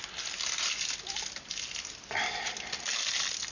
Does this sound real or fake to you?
real